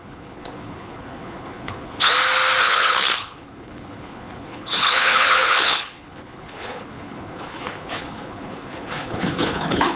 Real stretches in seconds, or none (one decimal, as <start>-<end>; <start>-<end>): 2.1-2.6